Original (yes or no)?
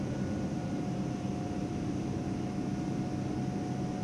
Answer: yes